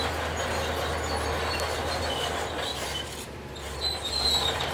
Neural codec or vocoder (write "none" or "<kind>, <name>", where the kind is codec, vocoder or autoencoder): none